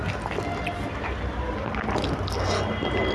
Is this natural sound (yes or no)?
yes